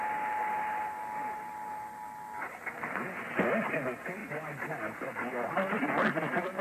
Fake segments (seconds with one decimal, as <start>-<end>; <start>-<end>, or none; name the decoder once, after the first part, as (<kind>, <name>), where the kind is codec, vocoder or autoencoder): none